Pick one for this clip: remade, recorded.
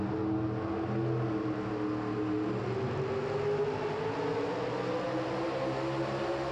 recorded